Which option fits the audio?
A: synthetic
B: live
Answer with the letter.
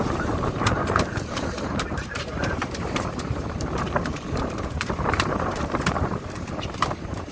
A